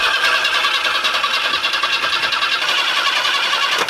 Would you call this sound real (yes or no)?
yes